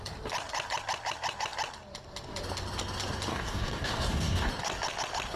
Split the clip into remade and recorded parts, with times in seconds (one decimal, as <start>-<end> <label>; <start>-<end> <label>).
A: 0.0-3.3 recorded; 3.3-4.5 remade; 4.5-5.4 recorded